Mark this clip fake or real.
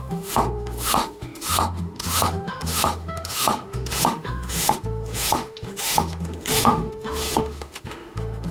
fake